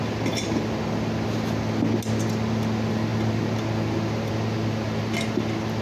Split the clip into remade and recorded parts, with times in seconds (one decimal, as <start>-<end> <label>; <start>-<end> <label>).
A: 0.0-5.8 recorded